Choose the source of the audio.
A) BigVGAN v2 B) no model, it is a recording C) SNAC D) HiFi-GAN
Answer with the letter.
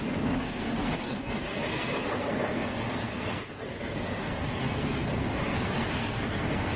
C